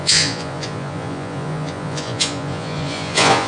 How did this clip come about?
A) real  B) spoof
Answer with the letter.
B